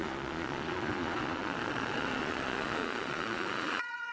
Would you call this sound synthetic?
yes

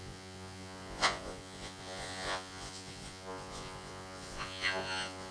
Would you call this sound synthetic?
yes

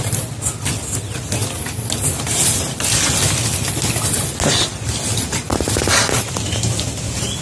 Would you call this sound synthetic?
no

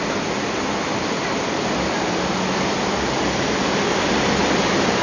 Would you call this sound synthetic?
no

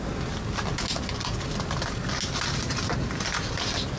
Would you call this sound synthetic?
no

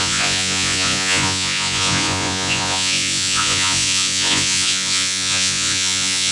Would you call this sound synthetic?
yes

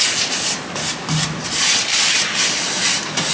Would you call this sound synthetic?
no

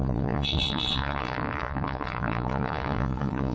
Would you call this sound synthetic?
yes